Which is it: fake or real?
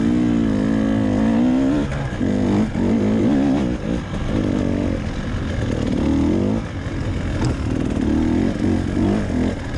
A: real